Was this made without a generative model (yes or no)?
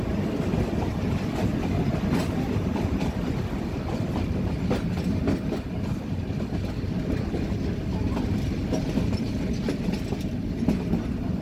yes